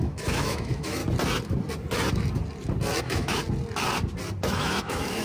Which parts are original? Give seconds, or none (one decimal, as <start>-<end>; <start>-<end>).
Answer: 1.0-3.0; 3.4-4.4